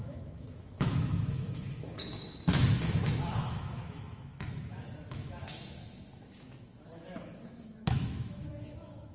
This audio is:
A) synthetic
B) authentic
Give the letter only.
A